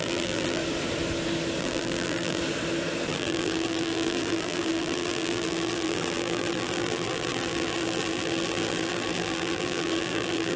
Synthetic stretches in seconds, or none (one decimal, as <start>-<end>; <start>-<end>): 0.0-0.6; 1.6-2.4; 3.1-10.6